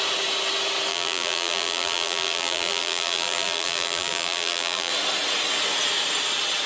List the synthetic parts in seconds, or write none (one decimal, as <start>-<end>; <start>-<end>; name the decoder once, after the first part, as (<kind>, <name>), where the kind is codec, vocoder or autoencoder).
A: 0.9-4.9 (vocoder, BigVGAN v2)